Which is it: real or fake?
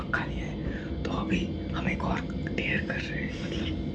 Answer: real